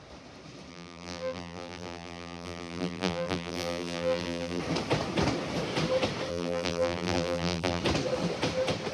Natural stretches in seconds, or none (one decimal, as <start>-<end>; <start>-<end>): 0.0-0.7; 4.6-6.3; 7.8-8.9